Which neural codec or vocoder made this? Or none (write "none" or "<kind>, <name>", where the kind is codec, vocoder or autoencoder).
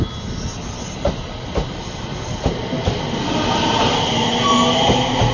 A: none